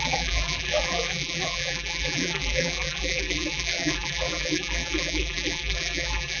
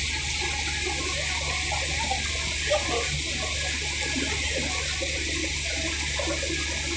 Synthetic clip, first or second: first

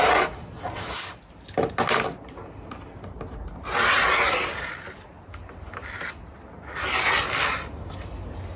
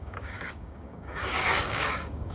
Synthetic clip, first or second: second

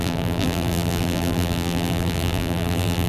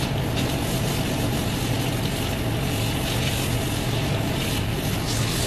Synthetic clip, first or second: first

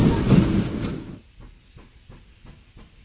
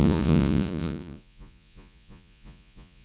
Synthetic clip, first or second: second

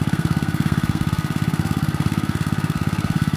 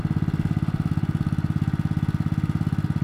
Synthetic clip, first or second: first